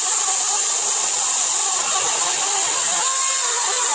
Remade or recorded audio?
recorded